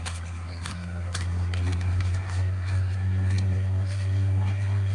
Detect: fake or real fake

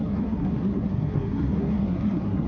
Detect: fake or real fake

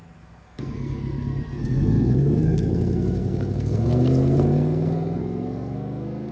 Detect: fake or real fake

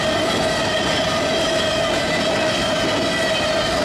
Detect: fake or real real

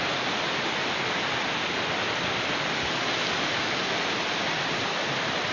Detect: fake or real real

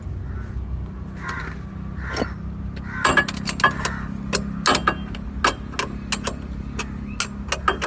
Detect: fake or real real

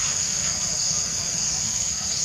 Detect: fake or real fake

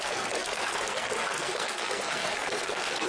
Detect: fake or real fake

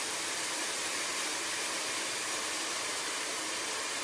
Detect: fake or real real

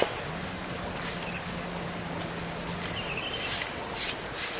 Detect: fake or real real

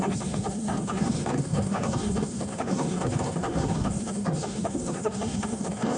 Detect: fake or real fake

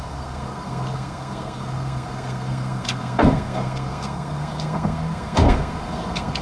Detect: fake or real fake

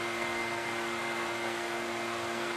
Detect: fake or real fake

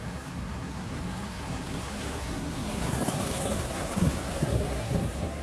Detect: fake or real fake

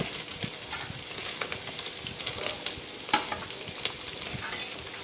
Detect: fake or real real